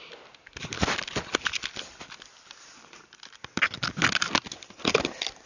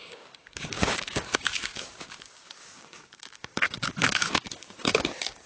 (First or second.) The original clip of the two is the first